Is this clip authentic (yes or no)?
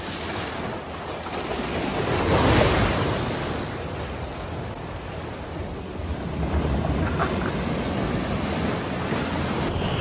yes